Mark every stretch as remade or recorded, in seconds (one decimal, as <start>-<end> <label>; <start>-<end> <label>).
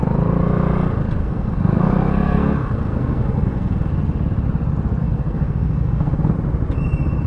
0.0-1.2 recorded; 1.2-3.9 remade; 3.9-5.0 recorded; 5.0-6.3 remade; 6.3-7.3 recorded